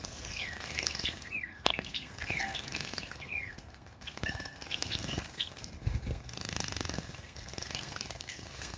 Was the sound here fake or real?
fake